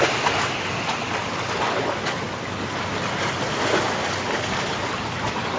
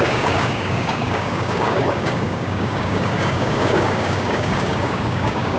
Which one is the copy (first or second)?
second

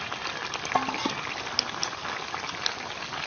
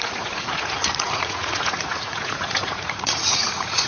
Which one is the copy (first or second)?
second